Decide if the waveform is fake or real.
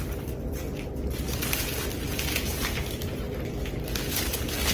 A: real